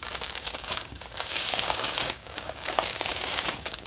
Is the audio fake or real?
fake